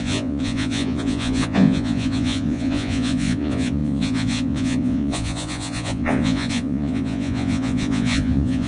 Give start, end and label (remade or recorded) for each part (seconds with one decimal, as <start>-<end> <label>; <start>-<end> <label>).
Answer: 0.0-8.7 remade